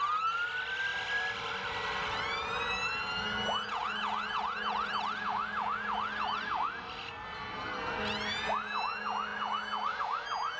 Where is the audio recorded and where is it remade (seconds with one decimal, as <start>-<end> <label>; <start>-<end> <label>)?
0.0-10.6 recorded